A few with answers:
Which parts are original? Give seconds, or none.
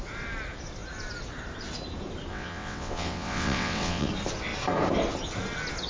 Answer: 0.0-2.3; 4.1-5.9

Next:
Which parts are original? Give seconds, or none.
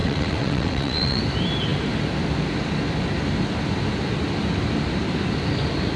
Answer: 1.2-6.0